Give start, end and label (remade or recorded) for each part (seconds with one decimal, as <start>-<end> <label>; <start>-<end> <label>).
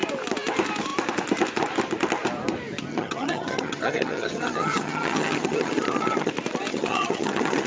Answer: 0.0-2.9 recorded; 2.9-6.3 remade; 6.3-6.7 recorded; 6.7-7.7 remade